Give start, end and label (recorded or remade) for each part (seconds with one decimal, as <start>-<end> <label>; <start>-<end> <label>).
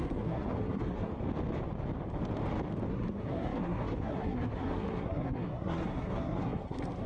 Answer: 0.0-1.1 remade; 1.1-2.9 recorded; 2.9-7.1 remade